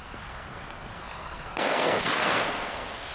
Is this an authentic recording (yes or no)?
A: no